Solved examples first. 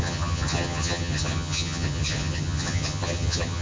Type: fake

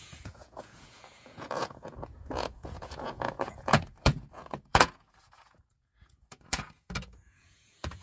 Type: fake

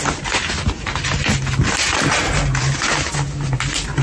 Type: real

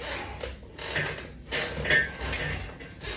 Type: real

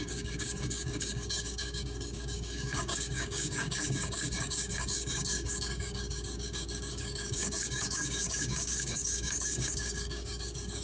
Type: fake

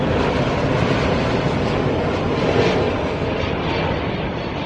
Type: real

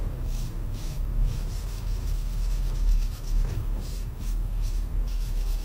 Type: fake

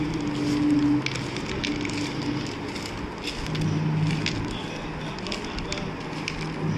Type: real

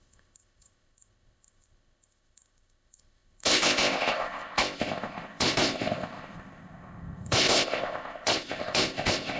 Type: fake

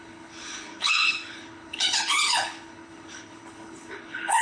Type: fake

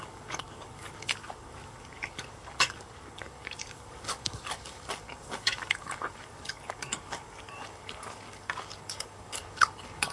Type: fake